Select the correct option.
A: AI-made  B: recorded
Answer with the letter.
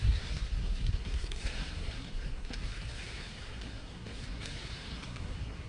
A